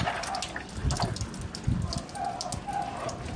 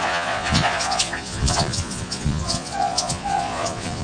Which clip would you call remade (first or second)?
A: second